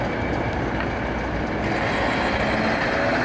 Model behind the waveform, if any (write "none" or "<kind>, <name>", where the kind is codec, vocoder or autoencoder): none